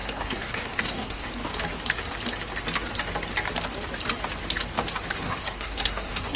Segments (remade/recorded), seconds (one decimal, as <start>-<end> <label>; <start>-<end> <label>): 0.0-1.3 remade; 1.3-5.1 recorded; 5.1-6.4 remade